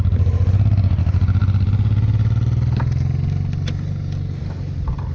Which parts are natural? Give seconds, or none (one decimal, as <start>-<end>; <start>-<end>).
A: 0.0-5.1